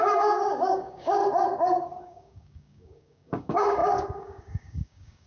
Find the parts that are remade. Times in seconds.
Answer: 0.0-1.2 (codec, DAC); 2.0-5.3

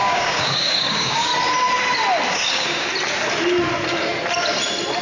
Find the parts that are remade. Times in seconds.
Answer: 0.0-1.3 (codec, DAC); 2.3-2.9

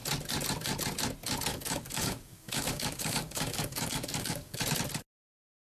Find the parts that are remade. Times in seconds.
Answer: 1.5-4.6 (codec, DAC)